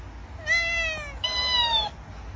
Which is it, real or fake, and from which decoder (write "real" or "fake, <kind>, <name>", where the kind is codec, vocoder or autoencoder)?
real